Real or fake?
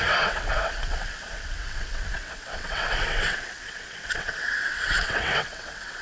fake